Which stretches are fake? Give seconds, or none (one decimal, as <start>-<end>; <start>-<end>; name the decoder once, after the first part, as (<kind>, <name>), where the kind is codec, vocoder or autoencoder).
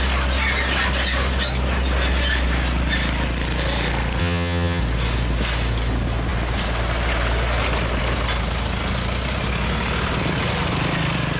4.2-4.8 (vocoder, HiFi-GAN)